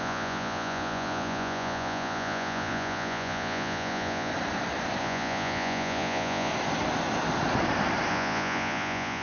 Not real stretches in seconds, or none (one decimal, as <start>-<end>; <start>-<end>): 0.0-4.3; 5.0-6.5; 8.1-9.2